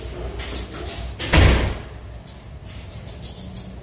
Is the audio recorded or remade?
recorded